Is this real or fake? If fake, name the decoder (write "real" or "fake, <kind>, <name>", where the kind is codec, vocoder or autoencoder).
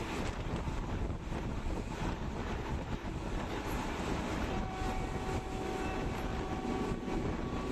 real